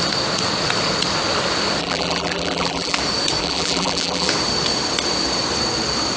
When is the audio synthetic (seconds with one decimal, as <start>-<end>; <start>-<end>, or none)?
1.8-3.0; 3.4-4.3